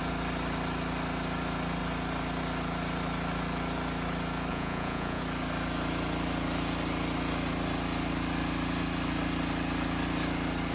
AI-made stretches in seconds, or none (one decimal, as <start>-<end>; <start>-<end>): 4.5-5.2